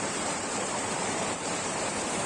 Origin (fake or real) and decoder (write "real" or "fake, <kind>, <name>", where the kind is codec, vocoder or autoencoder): fake, vocoder, BigVGAN v2